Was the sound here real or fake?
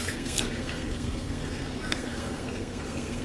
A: fake